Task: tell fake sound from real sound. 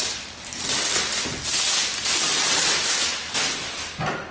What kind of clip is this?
real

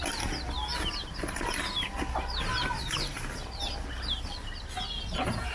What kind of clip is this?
real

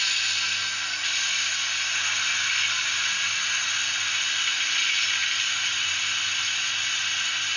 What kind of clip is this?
real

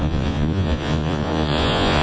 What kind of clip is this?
fake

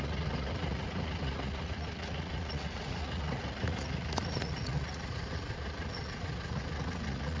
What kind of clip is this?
fake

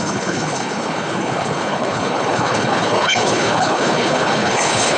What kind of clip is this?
fake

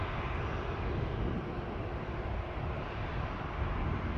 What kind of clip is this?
real